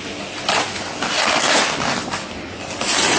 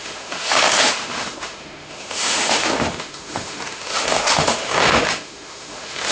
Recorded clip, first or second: first